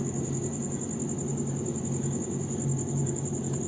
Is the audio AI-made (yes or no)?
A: no